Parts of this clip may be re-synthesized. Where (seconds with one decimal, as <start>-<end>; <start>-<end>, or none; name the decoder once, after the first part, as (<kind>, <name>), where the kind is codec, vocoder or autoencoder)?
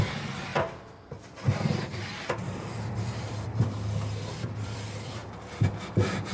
0.0-6.3 (vocoder, BigVGAN v2)